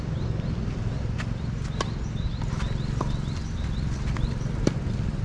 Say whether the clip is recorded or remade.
recorded